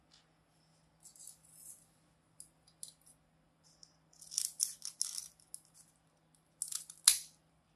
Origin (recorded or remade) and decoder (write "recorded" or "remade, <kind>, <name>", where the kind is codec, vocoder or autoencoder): recorded